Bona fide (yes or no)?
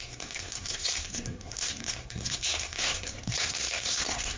no